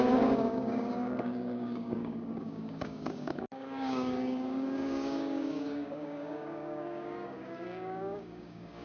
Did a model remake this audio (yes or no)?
yes